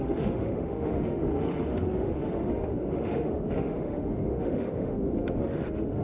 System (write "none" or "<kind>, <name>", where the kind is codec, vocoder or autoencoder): autoencoder, DAC-VAE